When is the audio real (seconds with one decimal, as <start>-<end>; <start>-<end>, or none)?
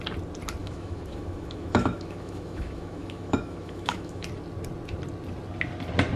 0.0-0.6; 4.3-6.2